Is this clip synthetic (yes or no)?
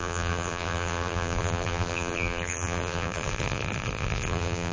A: yes